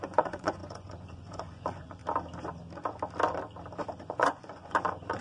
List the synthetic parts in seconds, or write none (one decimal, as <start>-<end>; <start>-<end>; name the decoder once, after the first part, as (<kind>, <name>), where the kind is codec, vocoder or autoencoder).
0.0-2.0 (vocoder, Vocos); 4.0-5.2

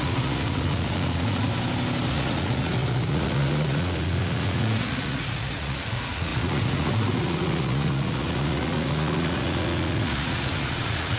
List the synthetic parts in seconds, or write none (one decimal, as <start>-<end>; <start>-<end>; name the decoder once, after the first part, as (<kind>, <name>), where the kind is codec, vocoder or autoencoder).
0.0-1.5 (vocoder, Vocos); 2.1-11.2

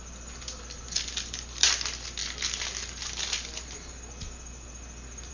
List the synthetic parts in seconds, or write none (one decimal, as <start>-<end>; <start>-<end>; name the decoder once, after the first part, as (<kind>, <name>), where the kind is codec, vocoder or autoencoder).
none

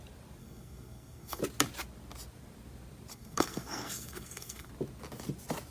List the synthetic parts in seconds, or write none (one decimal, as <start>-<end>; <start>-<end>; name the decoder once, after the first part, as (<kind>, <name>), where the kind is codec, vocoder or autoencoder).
0.4-1.4 (codec, SNAC); 3.1-4.7

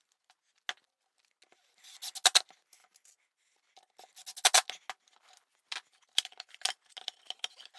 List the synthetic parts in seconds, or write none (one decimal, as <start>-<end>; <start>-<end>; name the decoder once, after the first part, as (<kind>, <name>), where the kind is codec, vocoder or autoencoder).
none

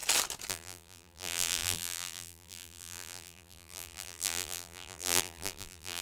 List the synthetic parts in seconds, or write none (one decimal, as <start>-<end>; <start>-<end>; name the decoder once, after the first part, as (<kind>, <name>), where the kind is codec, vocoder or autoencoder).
0.5-6.0 (vocoder, BigVGAN v2)

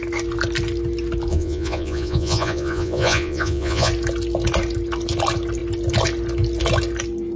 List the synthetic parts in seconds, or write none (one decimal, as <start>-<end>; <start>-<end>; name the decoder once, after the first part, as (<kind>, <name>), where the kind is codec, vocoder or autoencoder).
1.3-3.9 (vocoder, Vocos)

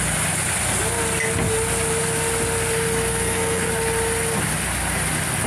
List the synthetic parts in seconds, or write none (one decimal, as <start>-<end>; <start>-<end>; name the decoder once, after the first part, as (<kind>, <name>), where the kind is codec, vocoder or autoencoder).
3.1-3.7 (codec, SNAC)